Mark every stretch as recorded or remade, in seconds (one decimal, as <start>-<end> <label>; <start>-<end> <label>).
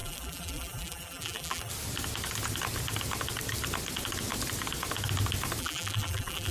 0.0-1.7 remade; 1.7-5.6 recorded; 5.6-6.5 remade